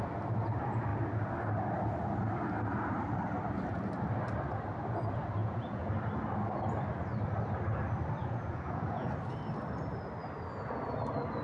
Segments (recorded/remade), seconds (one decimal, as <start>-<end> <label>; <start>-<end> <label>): 0.0-5.4 recorded; 5.4-5.9 remade; 5.9-8.2 recorded; 8.2-9.1 remade; 9.1-11.4 recorded